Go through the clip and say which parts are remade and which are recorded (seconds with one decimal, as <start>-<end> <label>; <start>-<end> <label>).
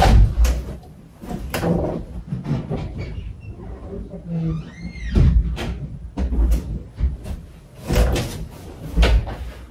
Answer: 0.0-9.7 recorded